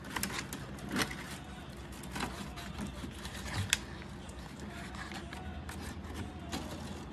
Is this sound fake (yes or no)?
no